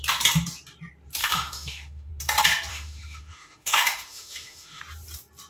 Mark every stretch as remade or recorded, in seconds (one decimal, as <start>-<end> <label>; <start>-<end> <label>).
0.0-1.2 recorded; 1.2-2.1 remade; 2.1-2.7 recorded; 2.7-4.8 remade; 4.8-5.5 recorded

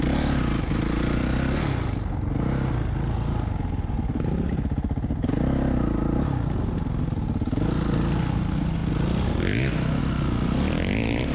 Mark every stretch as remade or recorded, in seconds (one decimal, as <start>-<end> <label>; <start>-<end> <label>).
0.0-11.3 recorded